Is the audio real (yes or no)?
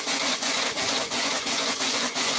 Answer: no